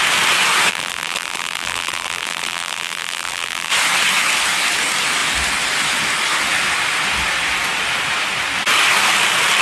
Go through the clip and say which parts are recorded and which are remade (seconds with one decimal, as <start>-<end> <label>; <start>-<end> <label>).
0.0-0.7 recorded; 0.7-3.7 remade; 3.7-9.6 recorded